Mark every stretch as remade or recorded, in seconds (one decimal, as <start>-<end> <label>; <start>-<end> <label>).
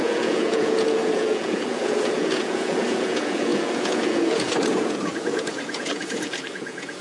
0.0-7.0 remade